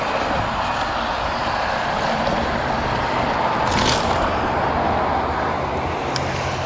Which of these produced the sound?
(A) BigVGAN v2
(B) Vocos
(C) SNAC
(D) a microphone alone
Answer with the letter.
D